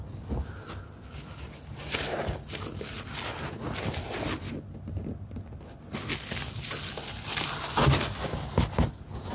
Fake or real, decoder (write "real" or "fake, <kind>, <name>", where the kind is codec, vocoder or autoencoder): real